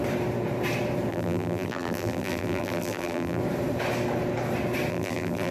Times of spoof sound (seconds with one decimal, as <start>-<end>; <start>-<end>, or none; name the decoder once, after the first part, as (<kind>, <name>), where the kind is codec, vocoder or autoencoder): 1.1-3.4 (vocoder, BigVGAN v2); 4.9-5.5